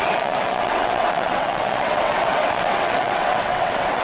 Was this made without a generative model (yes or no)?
no